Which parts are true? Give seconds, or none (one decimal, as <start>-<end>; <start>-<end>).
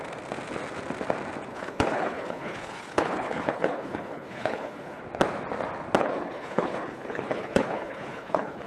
0.0-1.5; 5.0-6.0